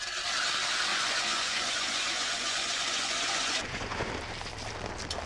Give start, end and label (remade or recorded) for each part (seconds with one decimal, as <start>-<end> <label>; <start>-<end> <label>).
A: 0.0-0.9 recorded; 0.9-4.1 remade; 4.1-5.3 recorded